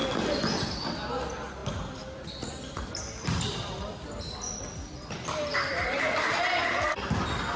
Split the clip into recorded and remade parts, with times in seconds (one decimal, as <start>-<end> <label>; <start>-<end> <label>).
0.0-1.6 recorded; 1.6-4.2 remade; 4.2-5.5 recorded; 5.5-6.4 remade; 6.4-7.6 recorded